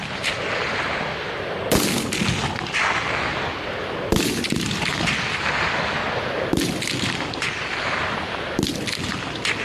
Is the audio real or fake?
real